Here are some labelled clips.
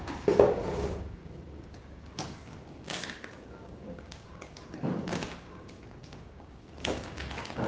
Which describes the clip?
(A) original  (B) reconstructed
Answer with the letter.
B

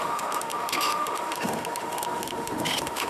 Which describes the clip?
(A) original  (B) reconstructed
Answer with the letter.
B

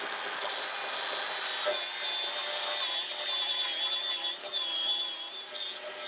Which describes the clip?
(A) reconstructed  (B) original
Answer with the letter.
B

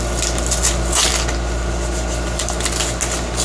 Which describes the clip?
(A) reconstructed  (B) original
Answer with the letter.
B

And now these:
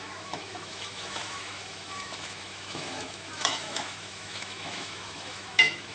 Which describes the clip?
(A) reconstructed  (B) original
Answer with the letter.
A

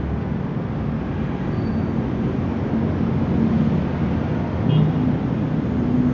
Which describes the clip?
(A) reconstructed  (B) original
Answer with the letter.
B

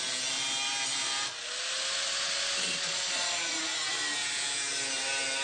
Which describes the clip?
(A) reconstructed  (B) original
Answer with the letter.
B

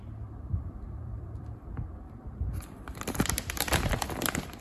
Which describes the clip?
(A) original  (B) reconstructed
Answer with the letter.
B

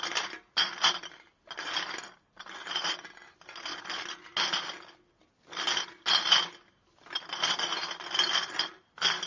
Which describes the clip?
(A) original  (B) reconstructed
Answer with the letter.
A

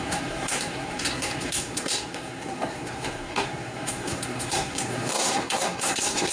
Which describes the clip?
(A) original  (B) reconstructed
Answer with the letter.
B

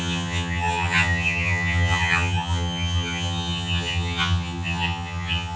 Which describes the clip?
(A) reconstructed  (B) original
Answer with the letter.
A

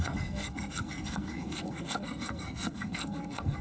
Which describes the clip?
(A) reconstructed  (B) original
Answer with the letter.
A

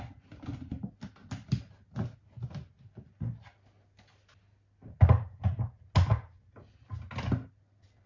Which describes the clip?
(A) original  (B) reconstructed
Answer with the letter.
A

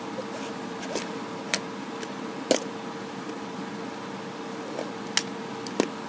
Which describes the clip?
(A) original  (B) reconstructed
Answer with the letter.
A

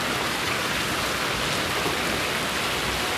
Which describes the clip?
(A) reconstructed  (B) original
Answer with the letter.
B